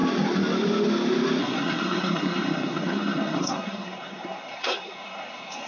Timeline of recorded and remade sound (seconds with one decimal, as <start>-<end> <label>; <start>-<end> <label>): 0.0-1.4 recorded; 1.4-5.7 remade